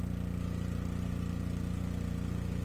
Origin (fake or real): real